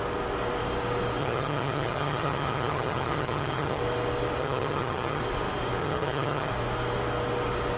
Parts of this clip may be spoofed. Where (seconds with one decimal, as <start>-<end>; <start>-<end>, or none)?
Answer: 1.2-3.8; 4.4-5.2; 5.8-6.5